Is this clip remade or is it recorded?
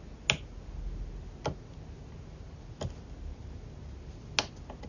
recorded